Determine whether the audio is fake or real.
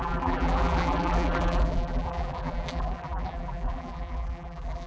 fake